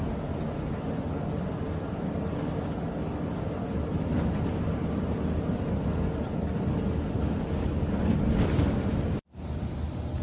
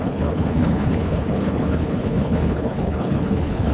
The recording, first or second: first